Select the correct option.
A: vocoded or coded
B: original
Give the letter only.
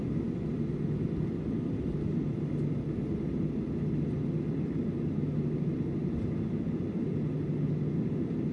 B